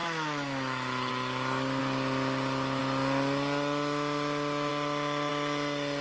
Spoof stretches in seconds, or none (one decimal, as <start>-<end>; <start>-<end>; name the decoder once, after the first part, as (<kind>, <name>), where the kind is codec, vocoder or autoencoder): 0.0-1.1 (autoencoder, DAC-VAE)